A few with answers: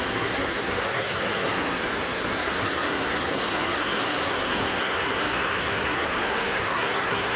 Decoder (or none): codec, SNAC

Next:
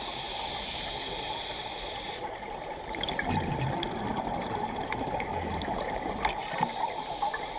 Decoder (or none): none